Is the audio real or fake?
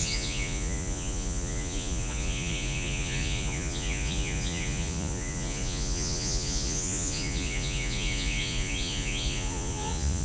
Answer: fake